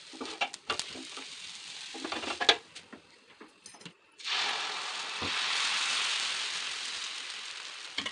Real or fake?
real